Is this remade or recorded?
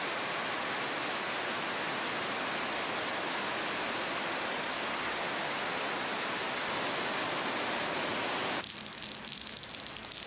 recorded